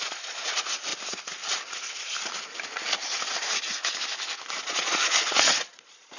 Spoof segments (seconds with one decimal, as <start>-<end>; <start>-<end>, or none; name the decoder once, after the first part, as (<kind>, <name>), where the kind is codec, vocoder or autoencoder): 0.0-0.9 (vocoder, Vocos); 4.6-6.2